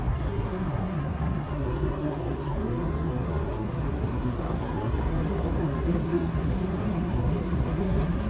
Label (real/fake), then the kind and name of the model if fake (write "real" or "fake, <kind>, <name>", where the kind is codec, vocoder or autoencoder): fake, codec, SNAC